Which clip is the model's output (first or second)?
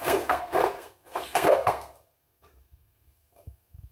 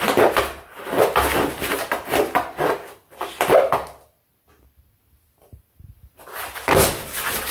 first